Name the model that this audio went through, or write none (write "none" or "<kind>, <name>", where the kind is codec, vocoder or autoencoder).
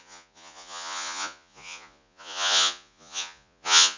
vocoder, Vocos